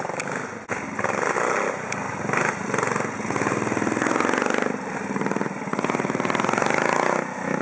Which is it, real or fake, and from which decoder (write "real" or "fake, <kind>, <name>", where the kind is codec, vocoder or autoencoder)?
real